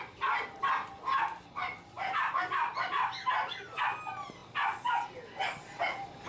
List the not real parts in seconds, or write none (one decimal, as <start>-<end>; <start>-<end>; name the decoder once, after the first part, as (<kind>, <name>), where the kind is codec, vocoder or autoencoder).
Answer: 1.6-3.8 (vocoder, BigVGAN v2)